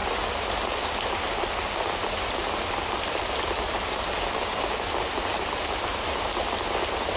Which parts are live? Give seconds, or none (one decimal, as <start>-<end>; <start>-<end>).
0.0-7.2